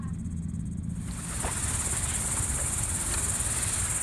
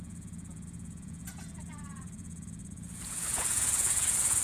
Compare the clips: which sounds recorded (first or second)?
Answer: first